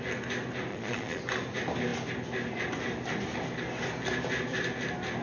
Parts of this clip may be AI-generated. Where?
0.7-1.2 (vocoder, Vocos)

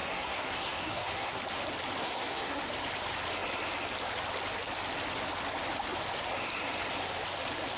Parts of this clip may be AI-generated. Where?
0.0-1.4 (codec, SNAC); 2.0-2.6